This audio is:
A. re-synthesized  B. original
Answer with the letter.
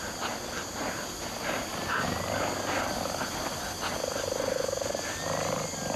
B